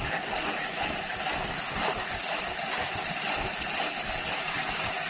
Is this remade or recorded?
recorded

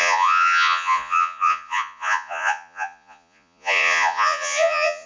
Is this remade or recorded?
remade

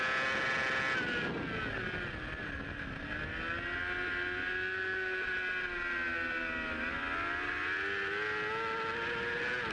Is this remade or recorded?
recorded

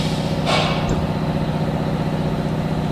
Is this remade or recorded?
recorded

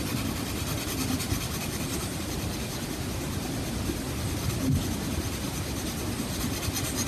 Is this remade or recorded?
recorded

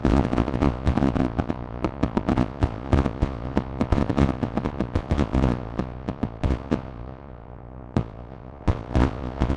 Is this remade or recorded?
remade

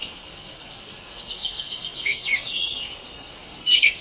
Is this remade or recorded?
remade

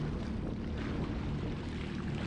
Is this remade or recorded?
recorded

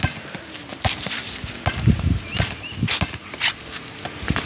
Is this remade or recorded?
recorded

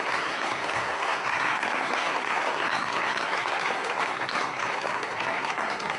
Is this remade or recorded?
remade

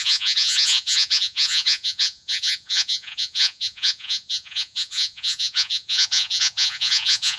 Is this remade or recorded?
remade